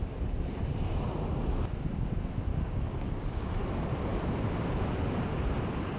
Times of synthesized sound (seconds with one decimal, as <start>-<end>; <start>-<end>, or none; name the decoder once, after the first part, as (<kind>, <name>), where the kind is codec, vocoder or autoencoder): 2.5-3.5 (codec, DAC)